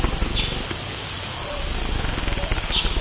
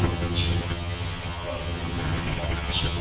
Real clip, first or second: first